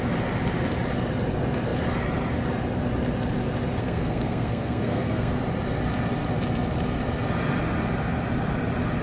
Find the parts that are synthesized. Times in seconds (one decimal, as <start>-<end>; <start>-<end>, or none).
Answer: 3.8-5.4